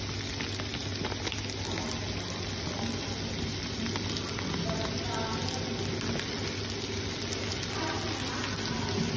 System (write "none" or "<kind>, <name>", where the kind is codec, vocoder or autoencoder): none